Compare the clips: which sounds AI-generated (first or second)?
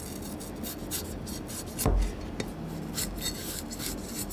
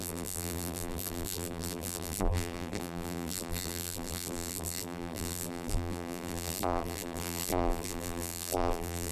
second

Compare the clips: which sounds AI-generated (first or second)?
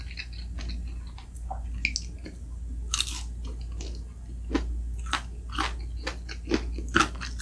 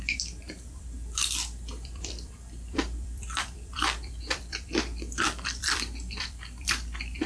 second